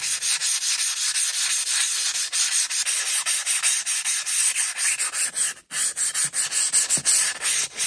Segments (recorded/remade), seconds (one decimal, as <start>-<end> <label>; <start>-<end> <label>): 0.0-7.9 recorded